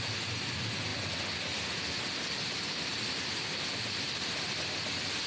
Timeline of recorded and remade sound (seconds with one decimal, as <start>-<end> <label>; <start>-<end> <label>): 0.0-5.3 recorded